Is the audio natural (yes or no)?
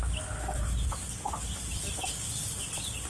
yes